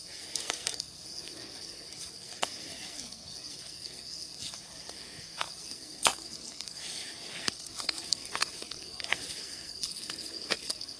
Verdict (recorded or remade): remade